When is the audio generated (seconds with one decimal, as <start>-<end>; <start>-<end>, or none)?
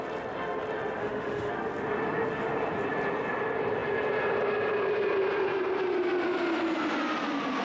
1.0-1.5